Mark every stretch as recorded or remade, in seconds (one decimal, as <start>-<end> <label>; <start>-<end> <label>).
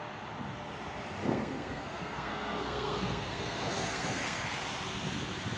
0.0-1.2 recorded; 1.2-4.6 remade; 4.6-5.6 recorded